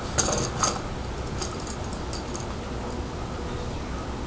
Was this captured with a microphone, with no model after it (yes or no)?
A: yes